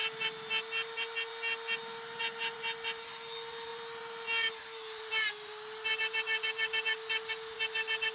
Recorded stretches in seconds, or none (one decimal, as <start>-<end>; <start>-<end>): 0.0-8.1

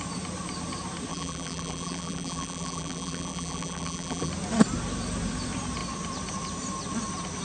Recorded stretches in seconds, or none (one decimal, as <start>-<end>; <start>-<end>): 0.0-1.1; 4.3-7.4

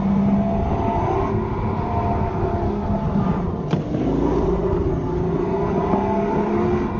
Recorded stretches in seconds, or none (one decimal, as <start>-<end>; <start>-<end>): 0.0-7.0

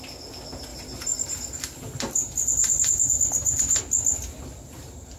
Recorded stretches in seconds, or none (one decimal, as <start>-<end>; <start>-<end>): 0.0-0.7; 3.8-5.2

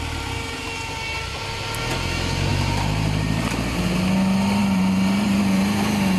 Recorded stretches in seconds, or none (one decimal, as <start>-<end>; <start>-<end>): 0.0-2.5; 3.8-4.6; 5.4-6.2